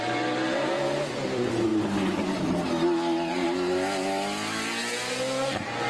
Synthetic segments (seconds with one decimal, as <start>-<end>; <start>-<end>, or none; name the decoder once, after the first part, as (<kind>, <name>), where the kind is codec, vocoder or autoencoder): none